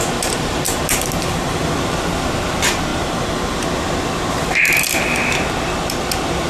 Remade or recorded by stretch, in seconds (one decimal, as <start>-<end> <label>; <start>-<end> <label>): 0.0-2.9 remade; 2.9-6.0 recorded; 6.0-6.5 remade